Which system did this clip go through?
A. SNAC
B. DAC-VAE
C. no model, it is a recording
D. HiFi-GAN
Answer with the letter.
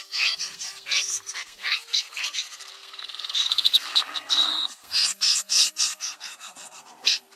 A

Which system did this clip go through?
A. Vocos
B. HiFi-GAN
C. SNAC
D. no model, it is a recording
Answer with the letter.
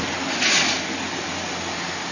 D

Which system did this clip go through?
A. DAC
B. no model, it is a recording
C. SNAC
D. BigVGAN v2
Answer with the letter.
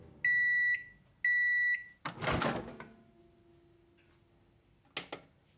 B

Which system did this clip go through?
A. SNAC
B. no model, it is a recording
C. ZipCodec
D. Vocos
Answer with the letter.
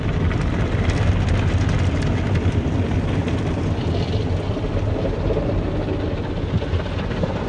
B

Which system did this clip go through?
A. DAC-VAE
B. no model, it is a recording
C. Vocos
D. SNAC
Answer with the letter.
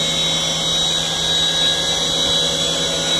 B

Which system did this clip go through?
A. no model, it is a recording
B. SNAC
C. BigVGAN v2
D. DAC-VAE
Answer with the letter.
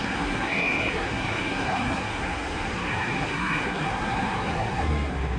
B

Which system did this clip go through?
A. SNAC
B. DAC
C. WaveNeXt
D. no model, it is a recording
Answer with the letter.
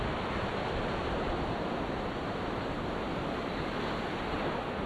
D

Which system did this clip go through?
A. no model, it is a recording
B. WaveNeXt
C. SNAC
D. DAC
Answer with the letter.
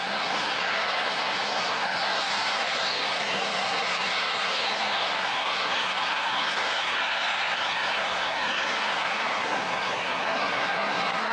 C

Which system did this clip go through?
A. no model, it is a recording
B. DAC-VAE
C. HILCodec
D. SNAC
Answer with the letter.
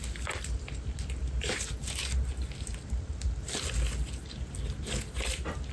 A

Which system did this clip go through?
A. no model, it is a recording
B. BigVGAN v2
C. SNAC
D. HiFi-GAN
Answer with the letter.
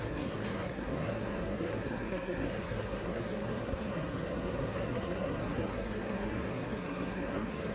C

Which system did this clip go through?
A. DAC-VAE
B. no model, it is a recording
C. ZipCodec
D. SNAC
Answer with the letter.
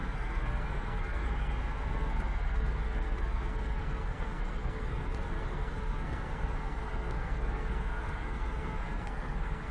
D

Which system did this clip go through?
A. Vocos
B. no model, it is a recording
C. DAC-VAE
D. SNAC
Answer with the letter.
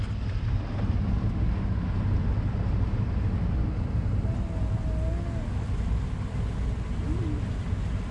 B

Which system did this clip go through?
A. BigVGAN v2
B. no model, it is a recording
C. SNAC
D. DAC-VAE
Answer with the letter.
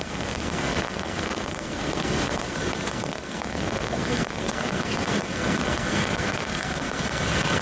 C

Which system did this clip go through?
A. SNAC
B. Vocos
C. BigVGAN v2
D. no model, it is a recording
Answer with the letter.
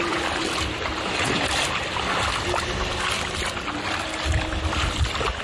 D